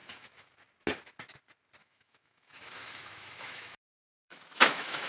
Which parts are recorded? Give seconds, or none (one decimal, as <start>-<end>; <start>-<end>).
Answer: 0.5-1.8